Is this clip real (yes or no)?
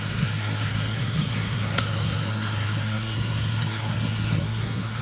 no